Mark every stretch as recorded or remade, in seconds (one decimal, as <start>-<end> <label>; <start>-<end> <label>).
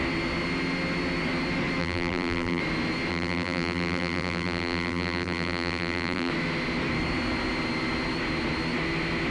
0.0-1.8 recorded; 1.8-2.6 remade; 2.6-3.1 recorded; 3.1-6.3 remade; 6.3-9.3 recorded